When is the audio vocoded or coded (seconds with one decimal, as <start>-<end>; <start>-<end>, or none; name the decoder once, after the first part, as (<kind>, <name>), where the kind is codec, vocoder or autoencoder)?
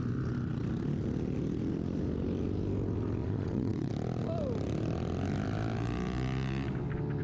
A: 3.2-3.9 (vocoder, Vocos)